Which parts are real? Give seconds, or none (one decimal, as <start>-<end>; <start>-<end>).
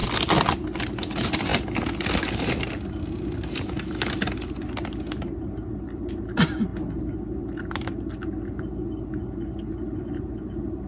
0.0-10.9